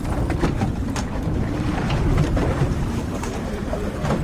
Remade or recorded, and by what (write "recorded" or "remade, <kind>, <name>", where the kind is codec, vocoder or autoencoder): remade, vocoder, BigVGAN v2